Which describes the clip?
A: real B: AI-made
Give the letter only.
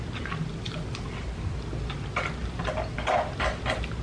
A